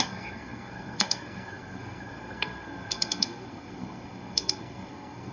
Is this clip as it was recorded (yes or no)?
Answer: no